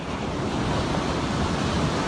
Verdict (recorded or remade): recorded